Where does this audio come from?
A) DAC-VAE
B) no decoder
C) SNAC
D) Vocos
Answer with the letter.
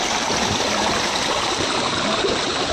B